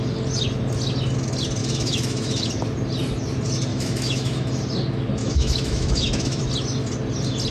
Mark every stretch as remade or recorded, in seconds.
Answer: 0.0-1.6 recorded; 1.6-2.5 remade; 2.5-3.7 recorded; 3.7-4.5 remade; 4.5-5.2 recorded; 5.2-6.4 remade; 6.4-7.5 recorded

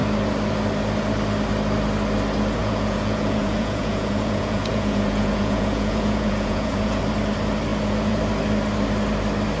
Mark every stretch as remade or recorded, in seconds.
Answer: 0.0-2.6 recorded; 2.6-7.0 remade; 7.0-7.7 recorded; 7.7-8.2 remade; 8.2-9.6 recorded

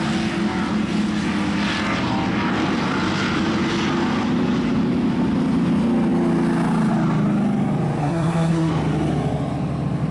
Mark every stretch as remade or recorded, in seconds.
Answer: 0.0-8.0 recorded; 8.0-8.7 remade; 8.7-10.1 recorded